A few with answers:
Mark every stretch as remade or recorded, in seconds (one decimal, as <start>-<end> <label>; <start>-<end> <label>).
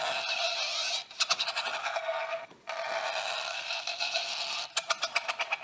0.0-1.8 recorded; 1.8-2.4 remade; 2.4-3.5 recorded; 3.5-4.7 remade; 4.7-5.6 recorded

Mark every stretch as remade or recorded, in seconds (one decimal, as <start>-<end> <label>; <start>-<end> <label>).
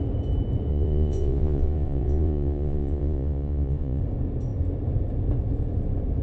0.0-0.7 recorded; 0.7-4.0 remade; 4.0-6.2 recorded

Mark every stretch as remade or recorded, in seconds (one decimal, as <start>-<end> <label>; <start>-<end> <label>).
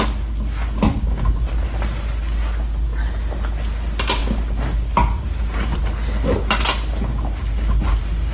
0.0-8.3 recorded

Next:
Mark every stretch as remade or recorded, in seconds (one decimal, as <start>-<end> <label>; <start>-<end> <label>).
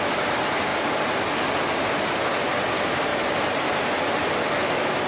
0.0-3.1 recorded; 3.1-3.7 remade; 3.7-5.1 recorded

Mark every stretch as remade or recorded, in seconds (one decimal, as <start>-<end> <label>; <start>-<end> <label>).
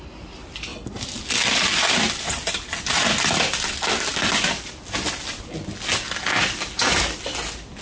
0.0-7.8 recorded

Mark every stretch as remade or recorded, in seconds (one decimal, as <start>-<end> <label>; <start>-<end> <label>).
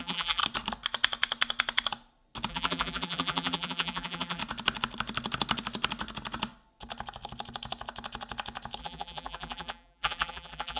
0.0-0.4 remade; 0.4-2.5 recorded; 2.5-4.4 remade; 4.4-8.8 recorded; 8.8-10.8 remade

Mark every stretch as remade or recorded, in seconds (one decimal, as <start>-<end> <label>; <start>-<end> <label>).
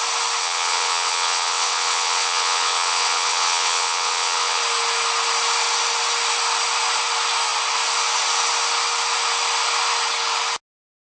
0.0-0.4 recorded; 0.4-4.6 remade; 4.6-11.2 recorded